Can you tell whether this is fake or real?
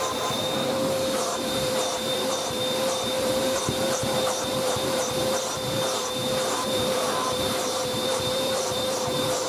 fake